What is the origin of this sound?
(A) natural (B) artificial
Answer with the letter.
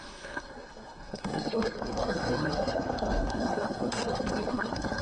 B